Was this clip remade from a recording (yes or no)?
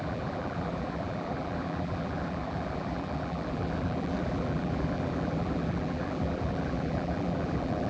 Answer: yes